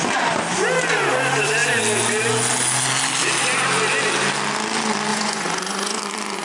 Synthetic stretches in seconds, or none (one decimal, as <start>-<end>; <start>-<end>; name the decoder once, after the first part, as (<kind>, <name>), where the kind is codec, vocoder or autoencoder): 5.1-6.0 (vocoder, Vocos)